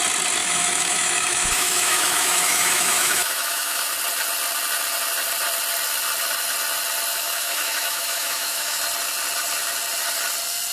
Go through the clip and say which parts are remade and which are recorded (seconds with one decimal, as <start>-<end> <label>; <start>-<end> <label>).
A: 0.0-0.4 recorded; 0.4-3.8 remade; 3.8-7.1 recorded; 7.1-8.8 remade; 8.8-10.7 recorded